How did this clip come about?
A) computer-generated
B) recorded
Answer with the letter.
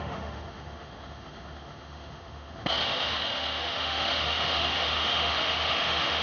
A